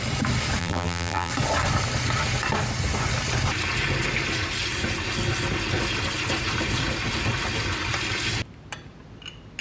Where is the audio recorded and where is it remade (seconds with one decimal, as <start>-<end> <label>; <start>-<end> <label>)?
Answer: 0.0-0.6 recorded; 0.6-1.3 remade; 1.3-9.6 recorded